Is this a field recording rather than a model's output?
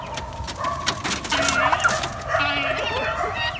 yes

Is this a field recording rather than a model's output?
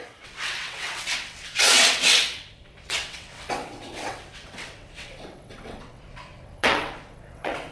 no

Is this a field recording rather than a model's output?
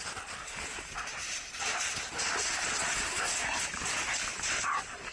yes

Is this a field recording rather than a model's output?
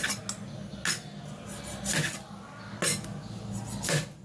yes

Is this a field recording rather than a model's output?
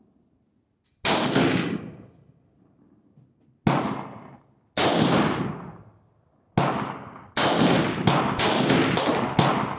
yes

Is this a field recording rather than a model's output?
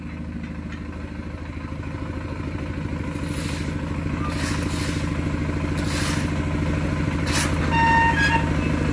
yes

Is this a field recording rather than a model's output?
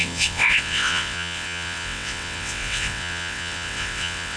no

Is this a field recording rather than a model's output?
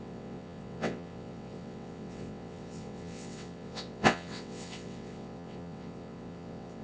no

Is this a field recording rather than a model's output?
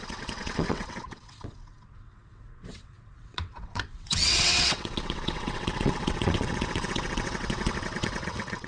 no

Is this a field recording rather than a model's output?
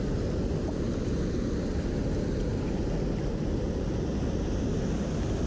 yes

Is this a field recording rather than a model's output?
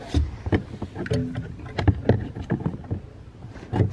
yes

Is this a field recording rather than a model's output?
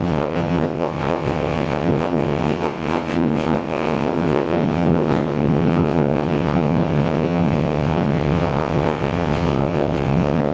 no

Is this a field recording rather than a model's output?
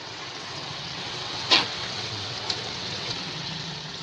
no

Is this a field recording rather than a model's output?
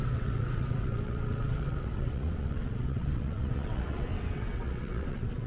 no